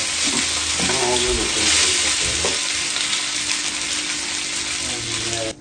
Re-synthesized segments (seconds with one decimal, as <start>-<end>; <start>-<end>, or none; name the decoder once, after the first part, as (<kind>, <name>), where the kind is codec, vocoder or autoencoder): none